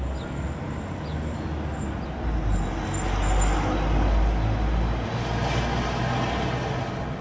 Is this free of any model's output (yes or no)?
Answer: yes